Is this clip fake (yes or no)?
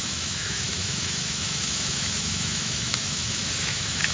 yes